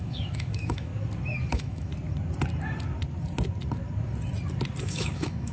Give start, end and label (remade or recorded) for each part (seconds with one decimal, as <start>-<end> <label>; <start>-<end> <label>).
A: 0.0-0.9 remade; 0.9-1.5 recorded; 1.5-1.9 remade; 1.9-4.8 recorded; 4.8-5.5 remade